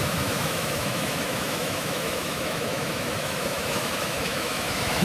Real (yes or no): no